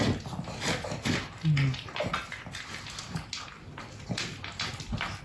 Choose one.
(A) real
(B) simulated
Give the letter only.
A